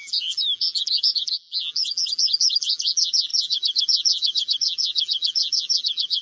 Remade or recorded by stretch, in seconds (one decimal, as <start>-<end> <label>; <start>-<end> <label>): 0.0-6.2 remade